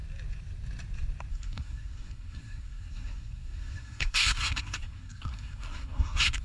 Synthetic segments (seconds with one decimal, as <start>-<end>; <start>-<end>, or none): 1.3-6.4